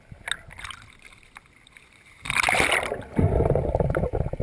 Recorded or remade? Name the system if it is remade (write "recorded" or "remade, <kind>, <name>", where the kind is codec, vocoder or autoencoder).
recorded